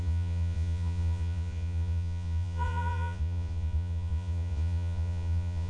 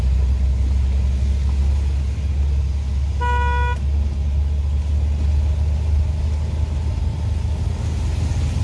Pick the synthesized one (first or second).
first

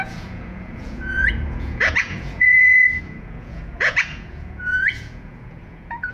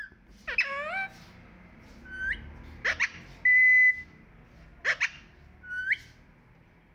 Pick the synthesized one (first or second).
first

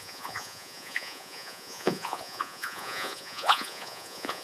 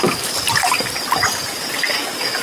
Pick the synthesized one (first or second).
first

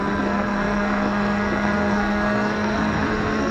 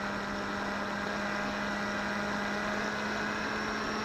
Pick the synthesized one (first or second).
first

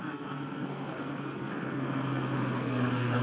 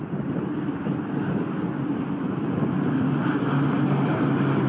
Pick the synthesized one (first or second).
first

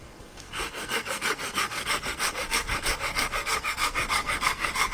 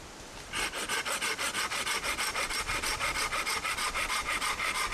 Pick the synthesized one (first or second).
first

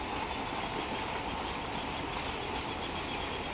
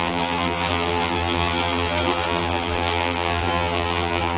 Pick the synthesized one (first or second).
second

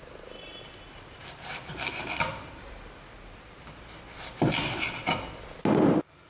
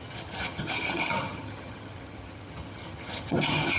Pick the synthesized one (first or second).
second